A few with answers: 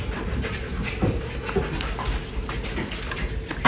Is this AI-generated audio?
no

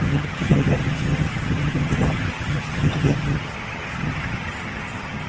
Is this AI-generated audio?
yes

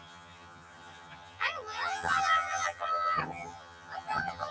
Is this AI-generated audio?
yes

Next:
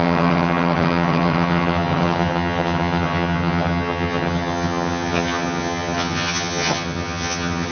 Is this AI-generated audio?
yes